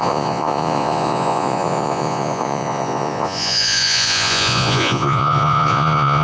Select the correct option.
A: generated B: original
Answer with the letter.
A